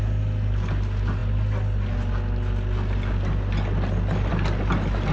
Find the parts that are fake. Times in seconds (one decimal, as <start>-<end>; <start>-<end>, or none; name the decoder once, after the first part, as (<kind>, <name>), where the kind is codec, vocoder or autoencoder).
none